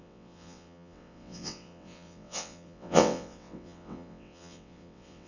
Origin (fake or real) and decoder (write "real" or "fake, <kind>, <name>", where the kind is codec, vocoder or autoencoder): fake, vocoder, WaveNeXt